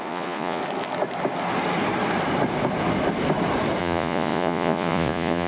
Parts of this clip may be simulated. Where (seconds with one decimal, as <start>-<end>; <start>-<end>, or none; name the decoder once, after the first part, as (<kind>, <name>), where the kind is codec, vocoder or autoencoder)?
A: 0.0-0.6 (vocoder, Vocos); 3.8-5.5